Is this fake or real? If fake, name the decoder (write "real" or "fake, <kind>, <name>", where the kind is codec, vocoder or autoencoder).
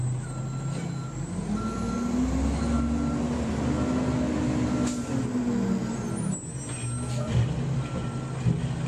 real